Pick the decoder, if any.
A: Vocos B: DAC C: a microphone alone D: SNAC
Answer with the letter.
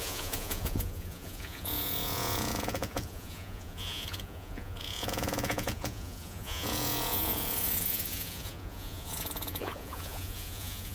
A